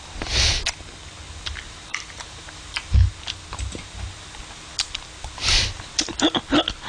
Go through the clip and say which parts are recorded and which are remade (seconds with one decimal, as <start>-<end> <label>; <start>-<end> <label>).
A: 0.0-1.9 recorded; 1.9-3.1 remade; 3.1-6.9 recorded